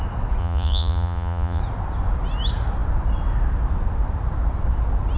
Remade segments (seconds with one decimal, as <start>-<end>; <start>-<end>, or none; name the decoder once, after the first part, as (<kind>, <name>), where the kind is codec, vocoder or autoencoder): 0.4-1.6 (vocoder, Vocos)